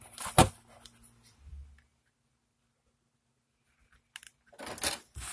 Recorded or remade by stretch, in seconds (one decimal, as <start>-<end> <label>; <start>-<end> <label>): 0.0-5.3 recorded